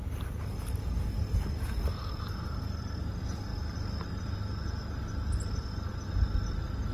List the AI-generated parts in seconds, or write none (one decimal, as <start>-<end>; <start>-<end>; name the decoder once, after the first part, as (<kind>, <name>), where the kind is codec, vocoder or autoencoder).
none